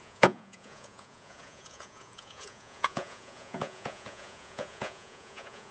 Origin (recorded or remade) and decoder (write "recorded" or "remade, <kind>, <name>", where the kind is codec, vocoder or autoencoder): remade, vocoder, Vocos